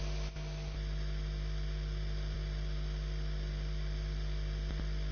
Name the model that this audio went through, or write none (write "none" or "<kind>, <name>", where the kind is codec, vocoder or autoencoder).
none